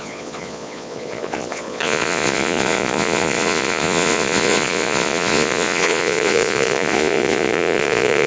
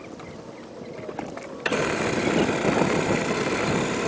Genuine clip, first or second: second